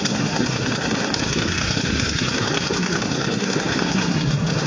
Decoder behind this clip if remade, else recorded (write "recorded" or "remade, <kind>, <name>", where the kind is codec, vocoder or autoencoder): remade, codec, SNAC